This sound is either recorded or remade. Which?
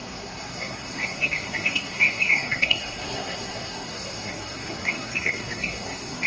remade